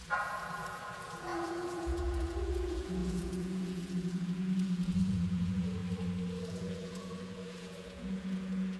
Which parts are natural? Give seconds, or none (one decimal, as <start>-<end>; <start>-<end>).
5.8-6.5

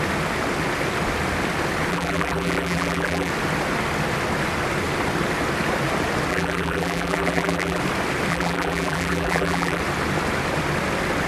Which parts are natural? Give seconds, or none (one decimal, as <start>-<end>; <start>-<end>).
0.0-1.9; 3.3-6.3; 7.8-8.3; 9.8-11.3

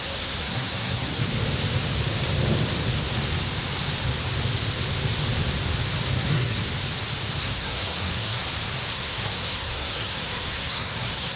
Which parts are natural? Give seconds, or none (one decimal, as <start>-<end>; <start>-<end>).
1.3-6.1; 6.6-7.4; 8.4-8.9

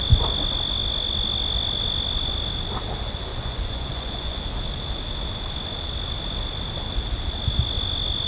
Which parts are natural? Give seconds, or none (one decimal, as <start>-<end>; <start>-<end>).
0.0-3.3; 4.4-8.3

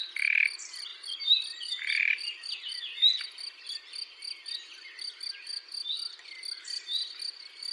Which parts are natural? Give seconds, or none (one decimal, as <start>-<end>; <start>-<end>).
0.0-0.9; 3.2-7.7

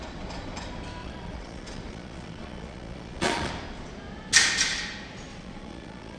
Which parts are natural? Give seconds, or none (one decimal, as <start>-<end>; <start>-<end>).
0.0-1.0; 3.5-5.3